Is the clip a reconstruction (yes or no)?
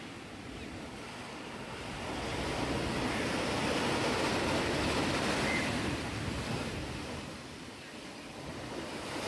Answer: no